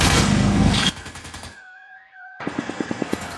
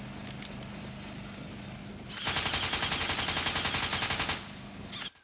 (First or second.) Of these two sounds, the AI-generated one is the first